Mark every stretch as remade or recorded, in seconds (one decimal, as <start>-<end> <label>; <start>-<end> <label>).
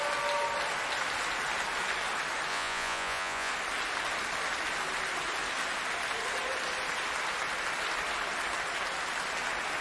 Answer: 0.0-2.5 recorded; 2.5-3.5 remade; 3.5-9.8 recorded